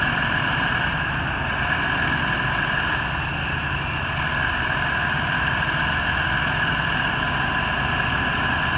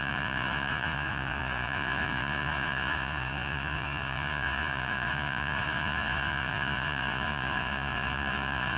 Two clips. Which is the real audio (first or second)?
first